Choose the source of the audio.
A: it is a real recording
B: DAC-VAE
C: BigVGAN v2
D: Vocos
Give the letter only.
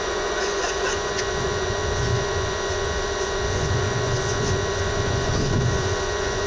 D